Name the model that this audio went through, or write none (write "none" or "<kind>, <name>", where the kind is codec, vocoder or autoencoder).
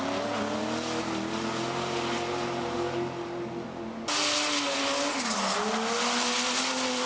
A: none